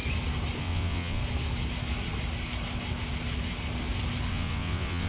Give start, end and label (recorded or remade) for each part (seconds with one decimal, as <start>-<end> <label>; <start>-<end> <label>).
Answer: 0.0-0.6 recorded; 0.6-1.2 remade; 1.2-4.3 recorded; 4.3-5.1 remade